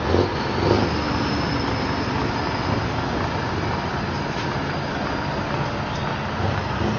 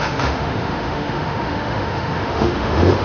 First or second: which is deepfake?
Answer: second